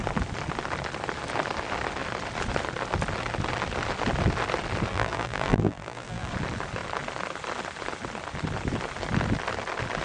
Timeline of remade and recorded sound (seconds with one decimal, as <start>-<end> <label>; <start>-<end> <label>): 0.0-4.9 recorded; 4.9-6.3 remade; 6.3-10.0 recorded